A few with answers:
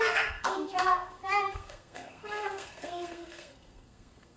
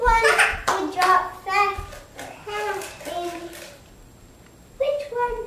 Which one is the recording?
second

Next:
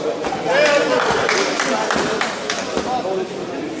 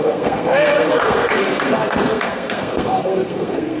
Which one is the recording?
first